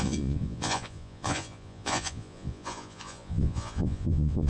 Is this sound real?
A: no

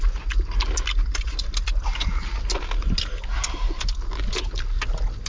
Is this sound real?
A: yes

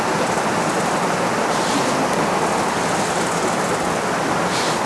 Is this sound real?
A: yes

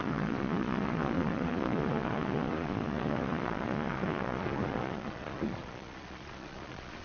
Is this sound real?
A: no